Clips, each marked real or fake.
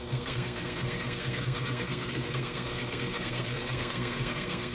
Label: fake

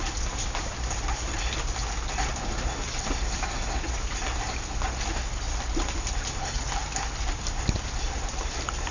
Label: real